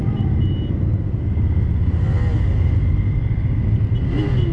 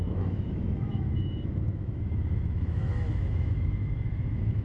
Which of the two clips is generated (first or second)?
second